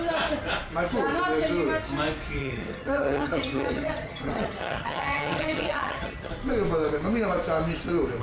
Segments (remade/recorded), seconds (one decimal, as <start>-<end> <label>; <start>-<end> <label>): 0.0-2.4 recorded; 2.4-6.3 remade; 6.3-8.2 recorded